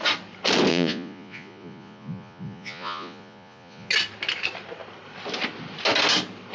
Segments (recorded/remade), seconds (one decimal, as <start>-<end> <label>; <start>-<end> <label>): 0.0-0.7 recorded; 0.7-3.9 remade; 3.9-6.5 recorded